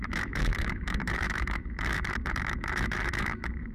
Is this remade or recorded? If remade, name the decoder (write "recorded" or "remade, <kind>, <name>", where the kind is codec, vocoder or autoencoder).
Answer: remade, autoencoder, DAC-VAE